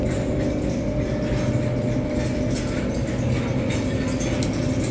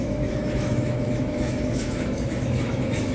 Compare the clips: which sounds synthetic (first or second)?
second